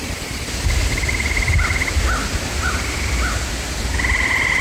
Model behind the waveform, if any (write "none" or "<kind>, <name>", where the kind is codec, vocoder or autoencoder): none